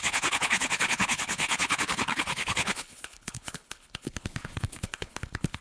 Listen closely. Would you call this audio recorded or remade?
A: remade